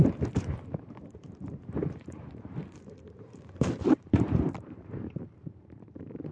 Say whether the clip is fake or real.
fake